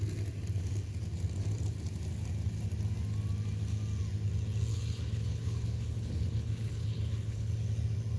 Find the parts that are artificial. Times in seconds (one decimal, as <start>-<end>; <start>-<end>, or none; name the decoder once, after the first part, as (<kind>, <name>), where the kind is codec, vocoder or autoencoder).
4.7-7.5 (codec, HILCodec)